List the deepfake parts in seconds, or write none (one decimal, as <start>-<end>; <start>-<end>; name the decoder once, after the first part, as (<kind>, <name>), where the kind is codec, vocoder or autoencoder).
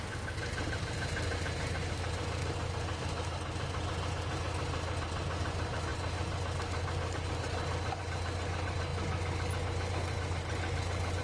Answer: none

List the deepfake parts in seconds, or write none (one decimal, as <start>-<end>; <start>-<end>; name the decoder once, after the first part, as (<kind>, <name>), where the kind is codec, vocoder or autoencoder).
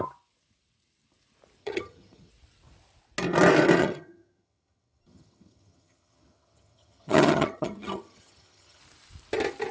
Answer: 1.6-2.3 (vocoder, HiFi-GAN); 3.8-8.8